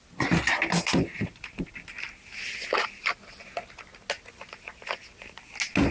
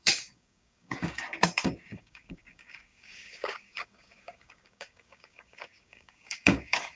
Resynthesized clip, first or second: second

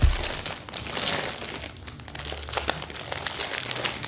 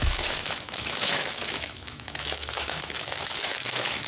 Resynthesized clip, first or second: second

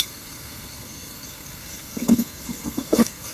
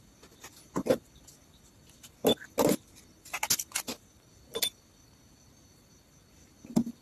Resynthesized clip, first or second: first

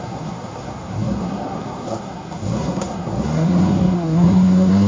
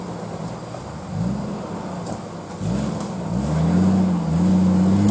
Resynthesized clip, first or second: first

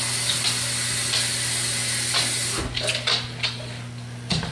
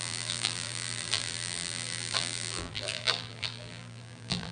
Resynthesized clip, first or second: second